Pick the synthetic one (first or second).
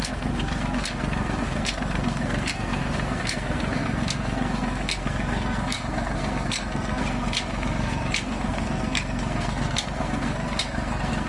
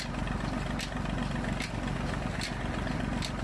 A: first